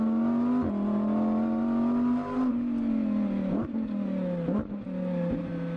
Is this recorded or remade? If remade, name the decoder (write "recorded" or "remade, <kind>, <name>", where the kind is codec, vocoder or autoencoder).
recorded